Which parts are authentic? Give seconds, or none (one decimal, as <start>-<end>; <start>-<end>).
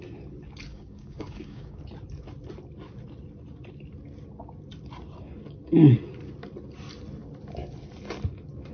0.0-0.7; 1.8-8.7